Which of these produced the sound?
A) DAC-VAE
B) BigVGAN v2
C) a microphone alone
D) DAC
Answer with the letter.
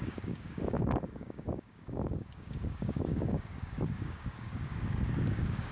D